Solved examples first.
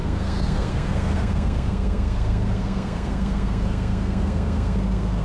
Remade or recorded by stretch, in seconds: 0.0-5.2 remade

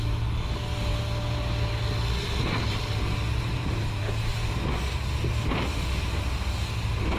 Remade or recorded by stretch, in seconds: 0.0-7.2 recorded

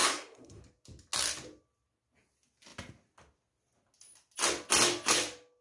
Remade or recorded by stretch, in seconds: 0.0-0.6 remade; 0.6-5.6 recorded